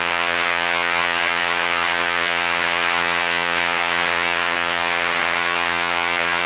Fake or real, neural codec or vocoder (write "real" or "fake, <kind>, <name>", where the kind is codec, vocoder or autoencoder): fake, vocoder, HiFi-GAN